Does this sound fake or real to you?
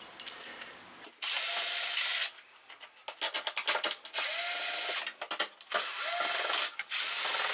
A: real